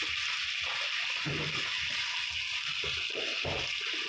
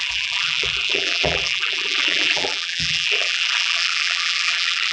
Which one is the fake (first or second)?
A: second